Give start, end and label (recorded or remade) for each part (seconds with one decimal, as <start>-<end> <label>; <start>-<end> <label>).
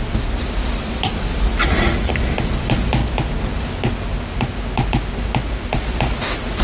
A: 0.0-1.6 recorded; 1.6-2.1 remade; 2.1-6.6 recorded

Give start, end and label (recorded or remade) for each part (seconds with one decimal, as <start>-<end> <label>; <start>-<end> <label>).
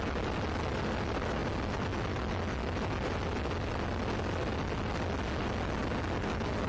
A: 0.0-6.7 recorded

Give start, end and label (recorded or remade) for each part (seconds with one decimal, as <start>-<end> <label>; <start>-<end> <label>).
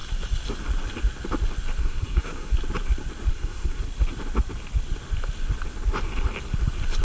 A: 0.0-1.8 recorded; 1.8-2.5 remade; 2.5-3.3 recorded; 3.3-3.8 remade; 3.8-7.0 recorded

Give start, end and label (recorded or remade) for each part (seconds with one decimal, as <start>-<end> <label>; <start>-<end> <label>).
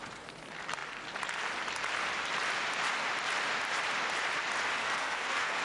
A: 0.0-4.8 recorded; 4.8-5.6 remade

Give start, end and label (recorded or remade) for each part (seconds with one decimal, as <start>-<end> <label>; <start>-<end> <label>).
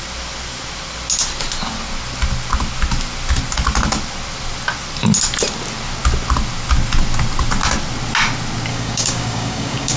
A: 0.0-8.7 recorded; 8.7-10.0 remade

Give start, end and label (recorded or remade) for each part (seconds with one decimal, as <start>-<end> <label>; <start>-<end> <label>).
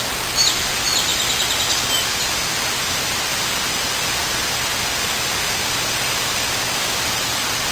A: 0.0-1.1 remade; 1.1-2.1 recorded; 2.1-3.3 remade; 3.3-7.0 recorded; 7.0-7.7 remade